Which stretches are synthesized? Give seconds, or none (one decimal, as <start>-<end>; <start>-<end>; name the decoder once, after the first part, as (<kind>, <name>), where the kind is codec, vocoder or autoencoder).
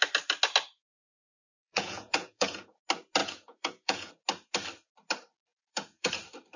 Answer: 1.5-2.8 (vocoder, Vocos); 3.2-4.1; 5.5-6.1